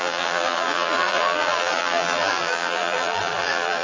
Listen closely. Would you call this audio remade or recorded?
remade